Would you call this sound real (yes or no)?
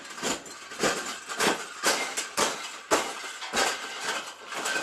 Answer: yes